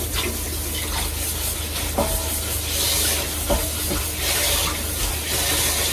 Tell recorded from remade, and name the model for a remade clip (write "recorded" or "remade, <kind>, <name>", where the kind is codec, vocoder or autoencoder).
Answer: recorded